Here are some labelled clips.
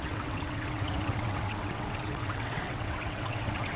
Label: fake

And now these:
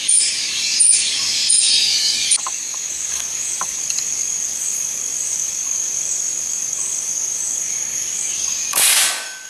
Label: fake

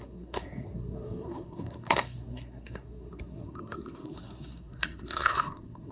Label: fake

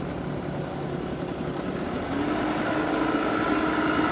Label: real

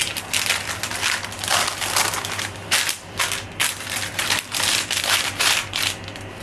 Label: real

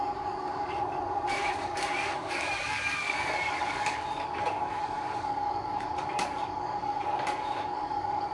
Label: fake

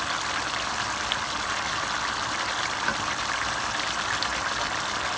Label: real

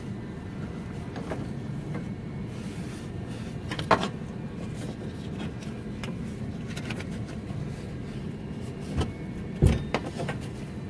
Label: real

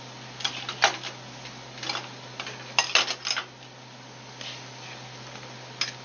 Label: real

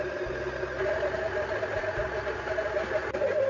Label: real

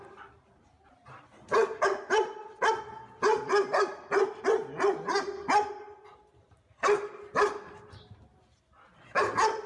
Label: real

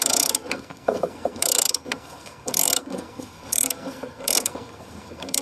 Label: fake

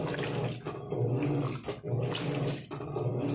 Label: real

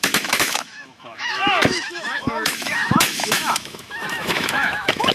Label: fake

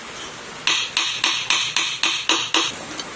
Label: real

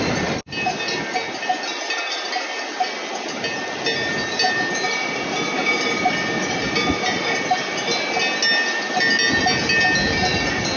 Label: real